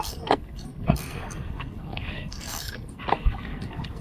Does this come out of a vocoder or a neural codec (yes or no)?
yes